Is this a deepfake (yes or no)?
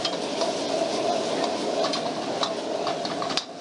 no